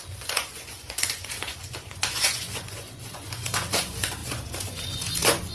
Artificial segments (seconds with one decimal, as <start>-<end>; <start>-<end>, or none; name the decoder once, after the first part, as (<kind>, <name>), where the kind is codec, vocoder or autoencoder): 0.0-5.5 (vocoder, Vocos)